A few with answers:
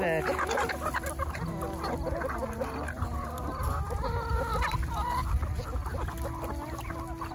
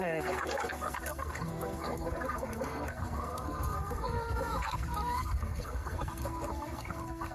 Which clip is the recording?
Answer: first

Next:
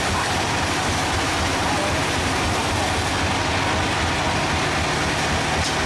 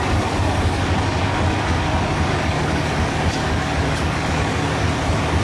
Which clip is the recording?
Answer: first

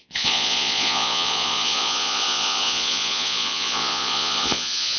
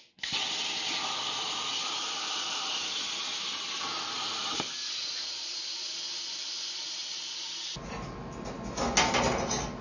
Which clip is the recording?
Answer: second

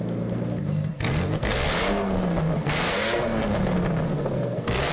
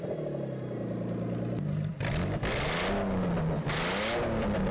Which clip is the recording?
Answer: second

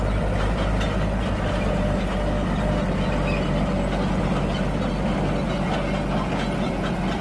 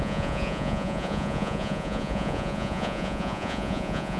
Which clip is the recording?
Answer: first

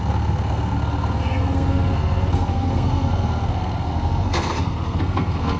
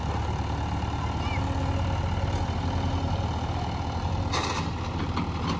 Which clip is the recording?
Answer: second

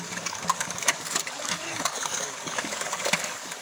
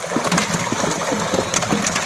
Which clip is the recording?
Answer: second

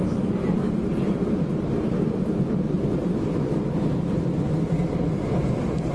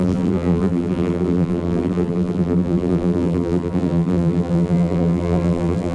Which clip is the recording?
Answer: first